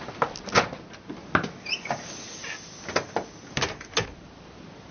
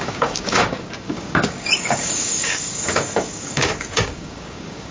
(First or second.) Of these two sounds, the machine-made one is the second